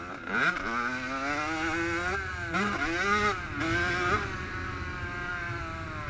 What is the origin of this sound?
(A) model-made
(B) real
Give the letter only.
B